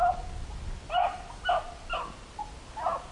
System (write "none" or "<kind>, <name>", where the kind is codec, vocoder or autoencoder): none